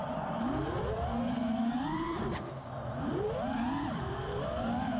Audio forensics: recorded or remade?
remade